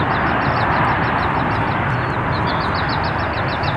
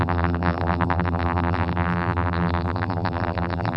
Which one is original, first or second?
first